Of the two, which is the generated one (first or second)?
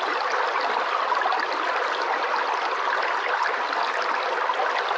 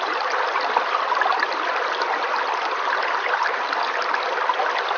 second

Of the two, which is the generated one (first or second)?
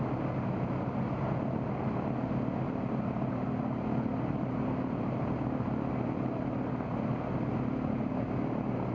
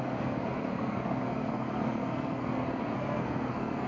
second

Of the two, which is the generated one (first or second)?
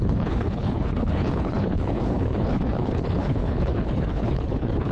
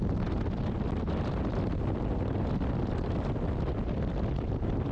first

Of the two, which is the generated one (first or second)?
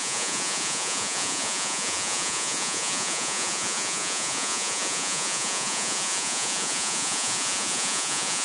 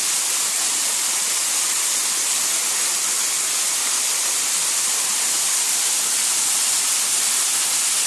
first